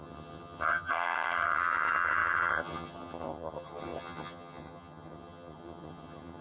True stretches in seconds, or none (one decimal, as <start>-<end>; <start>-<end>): none